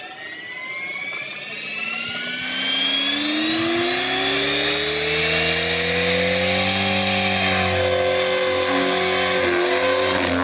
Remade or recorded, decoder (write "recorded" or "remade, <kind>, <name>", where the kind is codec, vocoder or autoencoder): recorded